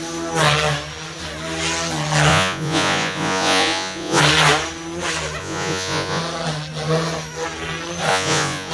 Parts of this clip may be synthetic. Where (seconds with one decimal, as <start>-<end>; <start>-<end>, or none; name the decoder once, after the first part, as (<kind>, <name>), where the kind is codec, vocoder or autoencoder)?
2.3-4.2 (vocoder, Vocos); 5.4-6.2; 8.1-8.7